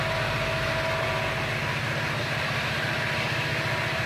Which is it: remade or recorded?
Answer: recorded